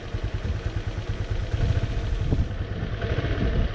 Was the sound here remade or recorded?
recorded